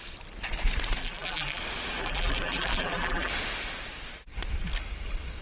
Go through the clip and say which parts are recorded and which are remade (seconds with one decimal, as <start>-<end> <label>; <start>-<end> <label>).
0.0-1.0 recorded; 1.0-1.6 remade; 1.6-2.0 recorded; 2.0-3.3 remade; 3.3-5.4 recorded